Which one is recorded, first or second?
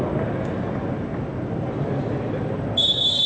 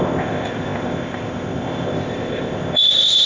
first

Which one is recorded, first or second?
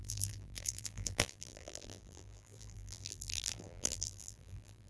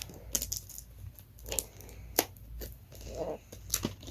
second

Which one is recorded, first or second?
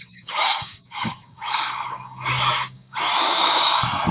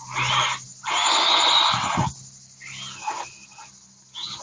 second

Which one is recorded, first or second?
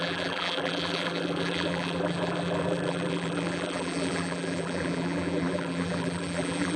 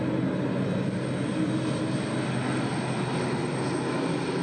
second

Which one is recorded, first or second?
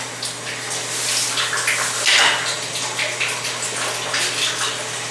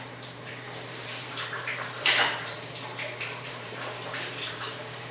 first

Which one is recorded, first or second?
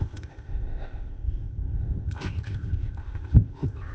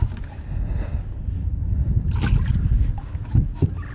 second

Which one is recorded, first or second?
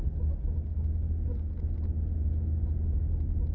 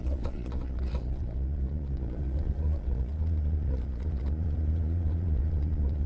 first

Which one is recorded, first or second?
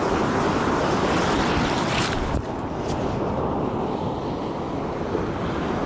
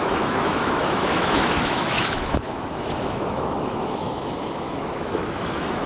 first